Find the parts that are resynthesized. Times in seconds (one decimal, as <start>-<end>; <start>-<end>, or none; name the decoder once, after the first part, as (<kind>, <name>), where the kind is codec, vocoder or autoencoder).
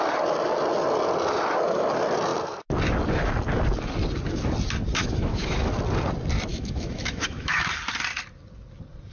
5.0-5.7 (autoencoder, DAC-VAE); 6.5-7.7